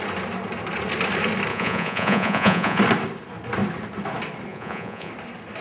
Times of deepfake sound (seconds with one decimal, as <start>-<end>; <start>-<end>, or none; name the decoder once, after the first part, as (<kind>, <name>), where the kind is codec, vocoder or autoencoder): 1.5-2.8 (vocoder, Vocos); 4.5-5.1